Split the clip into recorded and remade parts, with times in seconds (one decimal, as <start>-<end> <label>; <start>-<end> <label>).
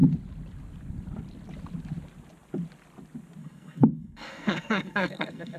0.0-3.4 recorded; 3.4-5.6 remade